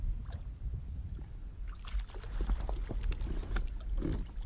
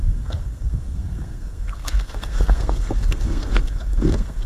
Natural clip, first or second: first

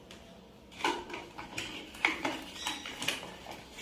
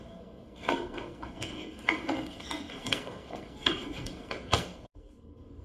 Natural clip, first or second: first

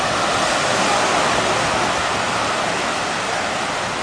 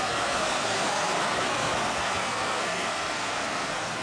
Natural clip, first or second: first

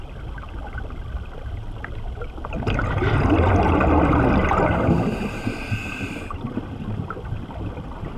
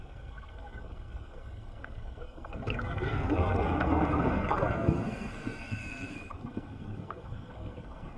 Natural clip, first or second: first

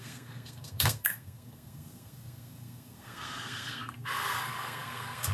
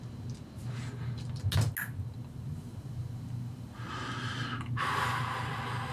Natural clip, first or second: second